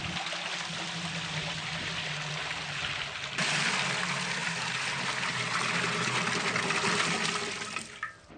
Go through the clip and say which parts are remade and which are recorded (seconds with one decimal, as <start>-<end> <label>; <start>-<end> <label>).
0.0-8.4 recorded

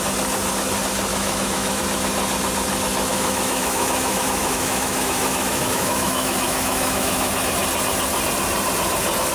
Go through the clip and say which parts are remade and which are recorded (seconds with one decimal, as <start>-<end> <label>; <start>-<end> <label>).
0.0-1.1 recorded; 1.1-1.8 remade; 1.8-3.1 recorded; 3.1-7.3 remade; 7.3-9.3 recorded